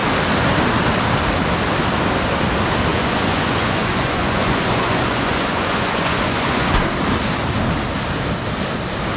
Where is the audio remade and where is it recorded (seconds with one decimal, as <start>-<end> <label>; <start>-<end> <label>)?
0.0-2.9 recorded; 2.9-6.8 remade; 6.8-9.2 recorded